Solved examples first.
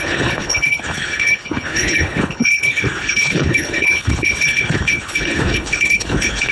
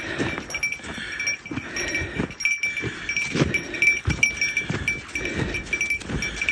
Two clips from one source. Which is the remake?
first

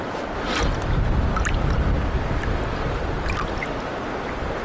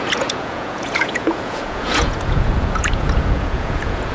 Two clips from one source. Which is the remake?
second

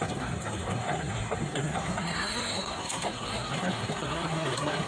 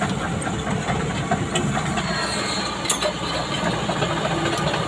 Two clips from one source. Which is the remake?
first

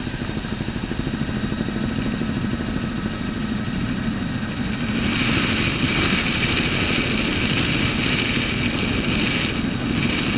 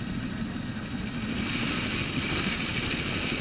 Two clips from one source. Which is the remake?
second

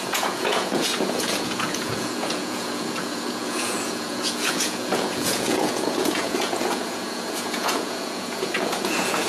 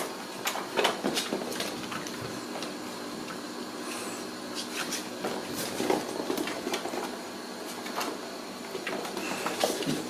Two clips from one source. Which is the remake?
first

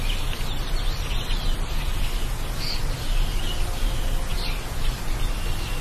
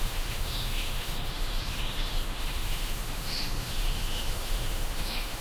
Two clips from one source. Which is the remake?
second